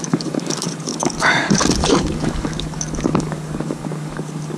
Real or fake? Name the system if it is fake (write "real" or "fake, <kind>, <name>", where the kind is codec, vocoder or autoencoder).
fake, codec, DAC